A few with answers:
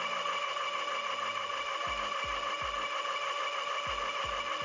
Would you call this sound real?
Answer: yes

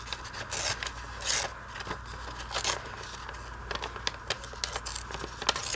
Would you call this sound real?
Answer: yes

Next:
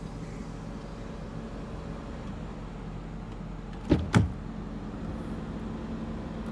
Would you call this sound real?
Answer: yes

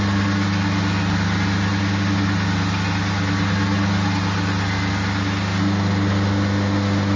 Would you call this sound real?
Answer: yes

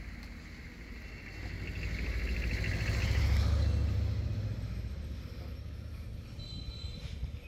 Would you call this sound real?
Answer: yes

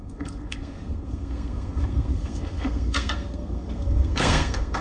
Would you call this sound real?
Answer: no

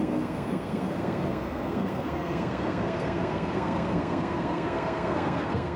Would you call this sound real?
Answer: no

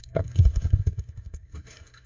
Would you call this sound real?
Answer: no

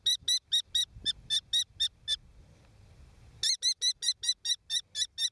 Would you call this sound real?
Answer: yes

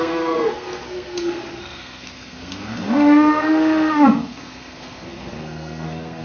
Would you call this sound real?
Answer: no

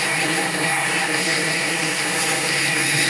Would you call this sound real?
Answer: no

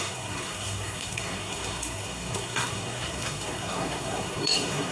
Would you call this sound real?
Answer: no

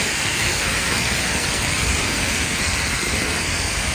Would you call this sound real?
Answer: no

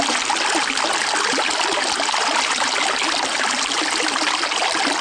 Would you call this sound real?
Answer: yes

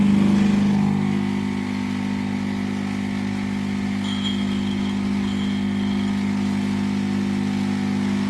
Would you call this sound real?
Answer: yes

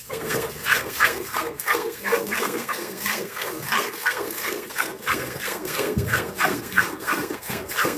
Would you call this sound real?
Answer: no